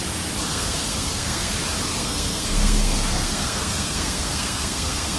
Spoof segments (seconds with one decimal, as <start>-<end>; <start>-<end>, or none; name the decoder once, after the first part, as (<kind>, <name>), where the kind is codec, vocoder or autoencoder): 0.5-1.5 (codec, SNAC); 1.9-5.2